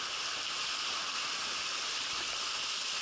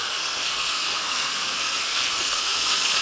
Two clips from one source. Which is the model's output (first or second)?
second